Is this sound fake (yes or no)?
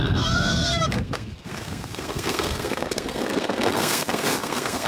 yes